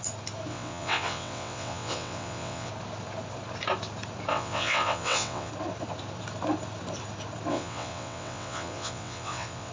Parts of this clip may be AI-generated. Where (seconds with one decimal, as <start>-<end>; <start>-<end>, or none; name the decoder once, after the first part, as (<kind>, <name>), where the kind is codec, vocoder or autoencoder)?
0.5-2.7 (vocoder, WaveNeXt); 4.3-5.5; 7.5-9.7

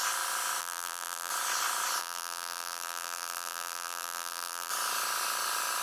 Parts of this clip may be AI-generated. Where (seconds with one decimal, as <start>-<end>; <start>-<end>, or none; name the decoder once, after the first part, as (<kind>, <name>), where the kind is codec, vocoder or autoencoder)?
0.6-1.3 (vocoder, BigVGAN v2); 2.0-4.7

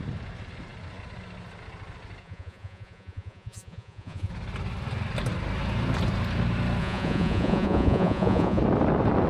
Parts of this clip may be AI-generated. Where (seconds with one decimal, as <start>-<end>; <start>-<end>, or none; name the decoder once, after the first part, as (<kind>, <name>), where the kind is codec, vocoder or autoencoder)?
2.2-4.3 (vocoder, Vocos); 6.8-8.6

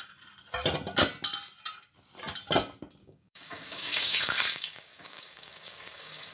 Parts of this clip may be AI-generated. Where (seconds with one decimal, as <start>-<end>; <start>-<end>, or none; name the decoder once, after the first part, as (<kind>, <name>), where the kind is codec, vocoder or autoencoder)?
3.0-6.3 (codec, DAC)

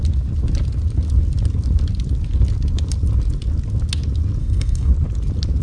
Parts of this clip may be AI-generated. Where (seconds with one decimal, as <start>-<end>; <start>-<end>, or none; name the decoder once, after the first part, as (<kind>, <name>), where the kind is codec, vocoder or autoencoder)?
4.4-4.9 (codec, SNAC)